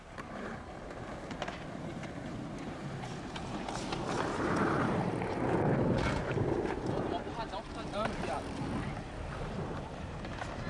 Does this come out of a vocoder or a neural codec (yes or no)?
yes